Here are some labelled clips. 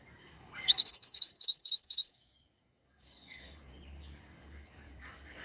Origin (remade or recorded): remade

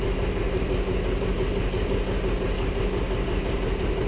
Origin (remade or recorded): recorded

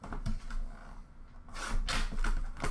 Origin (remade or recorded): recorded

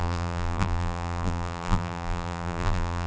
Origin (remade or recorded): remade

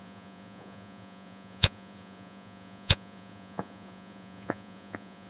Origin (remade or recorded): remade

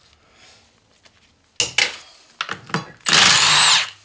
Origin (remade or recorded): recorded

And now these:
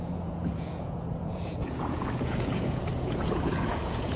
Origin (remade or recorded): remade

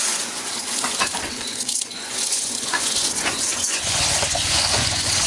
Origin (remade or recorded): remade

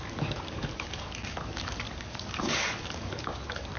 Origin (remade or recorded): remade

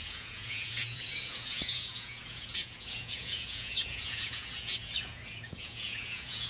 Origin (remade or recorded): remade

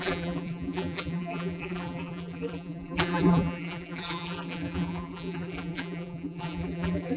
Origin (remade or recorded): remade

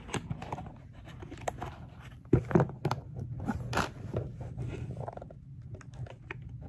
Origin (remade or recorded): recorded